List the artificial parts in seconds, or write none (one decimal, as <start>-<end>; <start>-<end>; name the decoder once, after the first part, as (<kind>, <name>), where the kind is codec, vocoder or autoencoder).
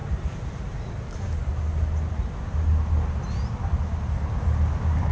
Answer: none